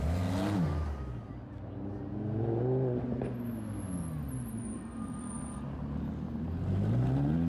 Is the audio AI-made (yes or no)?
no